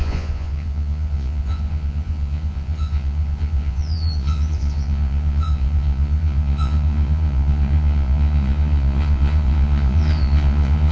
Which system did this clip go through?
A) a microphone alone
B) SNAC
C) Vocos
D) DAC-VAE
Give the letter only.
C